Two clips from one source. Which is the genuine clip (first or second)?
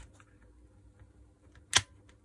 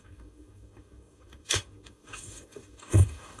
first